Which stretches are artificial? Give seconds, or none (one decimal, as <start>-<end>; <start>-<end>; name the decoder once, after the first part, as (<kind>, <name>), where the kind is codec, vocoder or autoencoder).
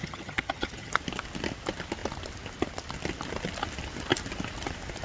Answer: 0.0-0.9 (vocoder, HiFi-GAN)